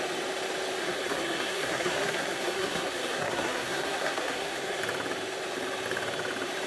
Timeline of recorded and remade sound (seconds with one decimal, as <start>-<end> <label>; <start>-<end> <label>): 0.0-0.8 recorded; 0.8-4.8 remade; 4.8-6.7 recorded

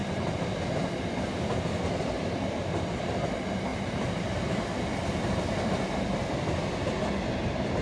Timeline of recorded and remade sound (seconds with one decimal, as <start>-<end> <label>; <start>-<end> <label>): 0.0-7.8 recorded

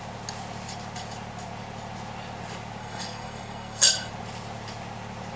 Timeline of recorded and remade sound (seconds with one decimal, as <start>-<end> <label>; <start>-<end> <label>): 0.0-2.8 recorded; 2.8-4.1 remade; 4.1-5.4 recorded

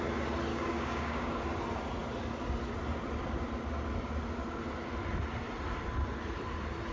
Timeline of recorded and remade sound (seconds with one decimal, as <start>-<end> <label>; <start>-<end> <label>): 0.0-0.5 recorded; 0.5-1.4 remade; 1.4-6.9 recorded

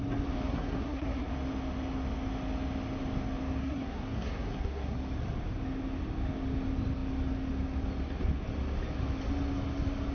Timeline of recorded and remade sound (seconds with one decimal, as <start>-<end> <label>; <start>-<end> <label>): 0.0-0.5 recorded; 0.5-1.3 remade; 1.3-3.6 recorded; 3.6-5.0 remade; 5.0-10.1 recorded

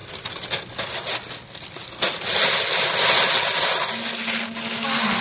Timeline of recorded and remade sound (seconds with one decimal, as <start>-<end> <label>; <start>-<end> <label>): 0.0-5.2 recorded

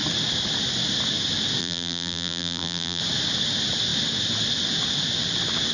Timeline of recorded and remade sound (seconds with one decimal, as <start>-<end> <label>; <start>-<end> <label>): 0.0-1.6 recorded; 1.6-3.0 remade; 3.0-5.7 recorded